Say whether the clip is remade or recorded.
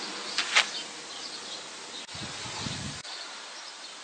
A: recorded